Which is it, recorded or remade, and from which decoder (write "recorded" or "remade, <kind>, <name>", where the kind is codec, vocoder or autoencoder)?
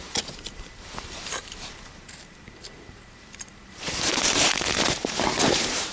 remade, vocoder, BigVGAN v2